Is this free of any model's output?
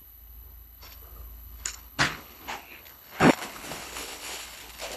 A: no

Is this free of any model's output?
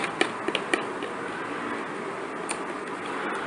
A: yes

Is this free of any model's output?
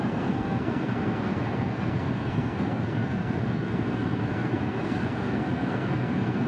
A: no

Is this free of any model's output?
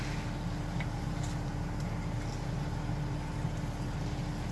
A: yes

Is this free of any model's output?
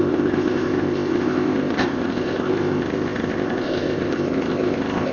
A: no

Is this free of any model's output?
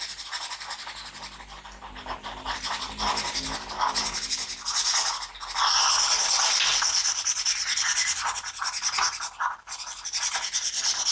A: yes